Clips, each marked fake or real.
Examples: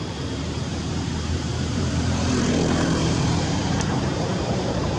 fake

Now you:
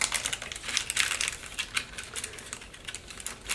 real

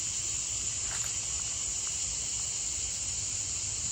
fake